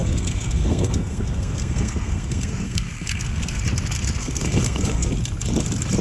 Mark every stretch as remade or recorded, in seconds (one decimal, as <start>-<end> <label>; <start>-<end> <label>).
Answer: 0.0-3.6 remade; 3.6-4.2 recorded; 4.2-5.1 remade; 5.1-6.0 recorded